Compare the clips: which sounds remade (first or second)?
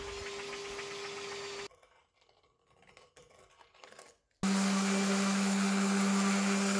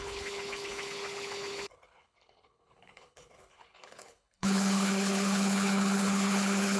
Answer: second